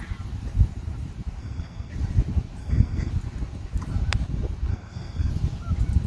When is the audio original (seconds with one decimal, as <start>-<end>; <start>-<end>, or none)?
0.0-1.4; 1.9-2.6; 3.1-4.7; 5.3-6.1